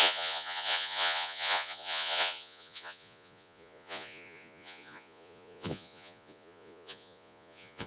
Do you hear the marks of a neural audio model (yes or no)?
yes